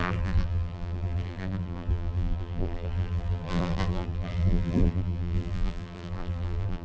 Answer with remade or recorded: remade